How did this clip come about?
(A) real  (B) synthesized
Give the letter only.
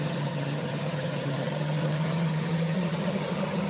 B